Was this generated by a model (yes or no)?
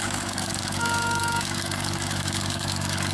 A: yes